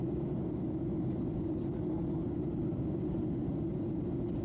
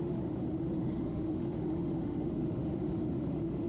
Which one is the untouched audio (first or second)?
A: first